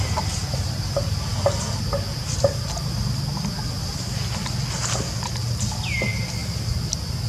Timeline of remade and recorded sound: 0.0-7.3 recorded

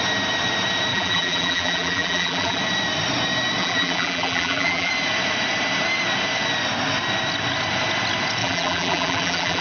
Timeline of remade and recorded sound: 0.0-0.9 recorded; 0.9-2.6 remade; 2.6-3.6 recorded; 3.6-4.9 remade; 4.9-8.4 recorded; 8.4-9.6 remade

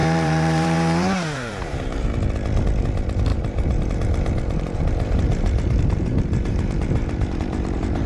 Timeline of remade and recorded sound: 0.0-2.1 remade; 2.1-3.3 recorded; 3.3-8.1 remade

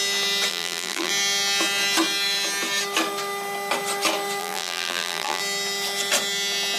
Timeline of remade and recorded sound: 0.0-0.5 recorded; 0.5-1.1 remade; 1.1-4.4 recorded; 4.4-5.4 remade; 5.4-6.8 recorded